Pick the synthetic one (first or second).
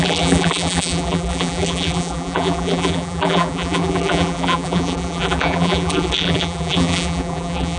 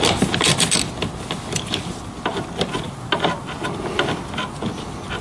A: first